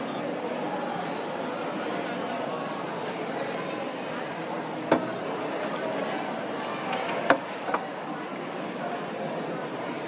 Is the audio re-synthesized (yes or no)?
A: no